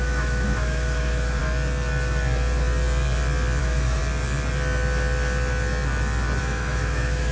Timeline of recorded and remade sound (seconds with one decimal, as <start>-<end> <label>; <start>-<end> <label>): 0.0-1.4 remade; 1.4-3.6 recorded; 3.6-4.0 remade; 4.0-6.4 recorded; 6.4-7.3 remade